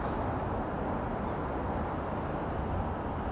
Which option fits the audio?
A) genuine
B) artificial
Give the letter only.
A